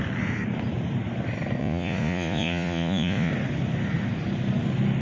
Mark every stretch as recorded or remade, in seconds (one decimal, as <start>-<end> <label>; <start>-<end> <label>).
0.0-1.6 recorded; 1.6-3.3 remade; 3.3-5.0 recorded